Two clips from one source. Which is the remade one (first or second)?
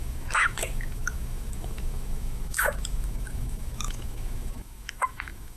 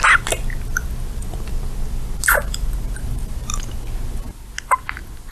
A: first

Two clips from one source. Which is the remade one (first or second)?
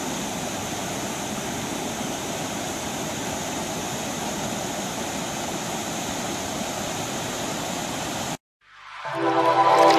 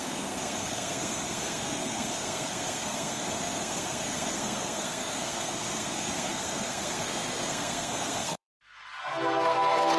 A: second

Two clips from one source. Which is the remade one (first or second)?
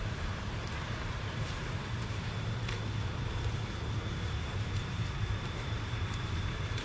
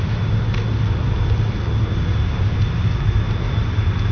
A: first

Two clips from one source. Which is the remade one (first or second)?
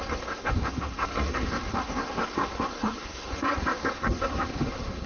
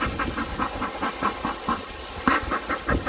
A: first